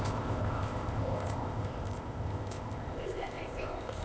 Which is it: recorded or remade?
remade